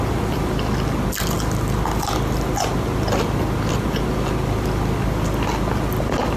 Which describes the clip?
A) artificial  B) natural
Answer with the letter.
B